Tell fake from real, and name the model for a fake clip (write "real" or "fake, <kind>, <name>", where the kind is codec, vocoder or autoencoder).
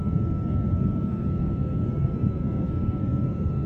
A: fake, codec, SNAC